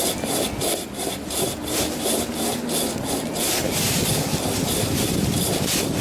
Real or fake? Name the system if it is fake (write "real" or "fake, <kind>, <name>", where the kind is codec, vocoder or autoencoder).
fake, vocoder, BigVGAN v2